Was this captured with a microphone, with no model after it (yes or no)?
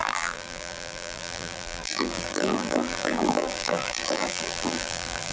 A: no